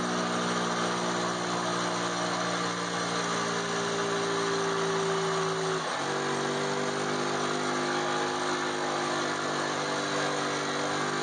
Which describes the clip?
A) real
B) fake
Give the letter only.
A